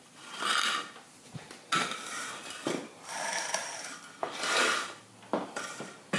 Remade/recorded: remade